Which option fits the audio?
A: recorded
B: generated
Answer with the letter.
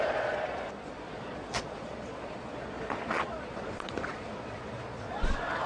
B